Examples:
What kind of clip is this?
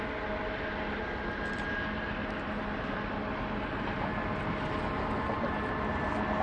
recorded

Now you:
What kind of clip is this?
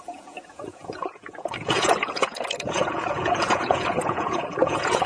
remade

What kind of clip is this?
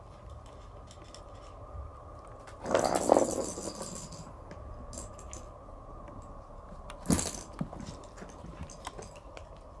recorded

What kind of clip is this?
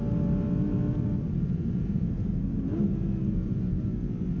recorded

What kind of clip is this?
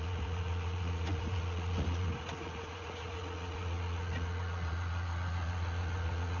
remade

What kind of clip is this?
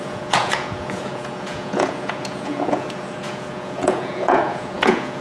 remade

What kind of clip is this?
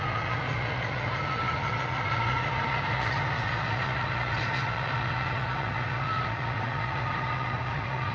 remade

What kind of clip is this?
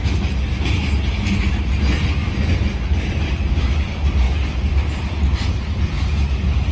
recorded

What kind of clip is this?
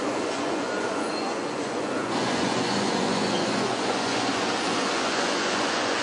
remade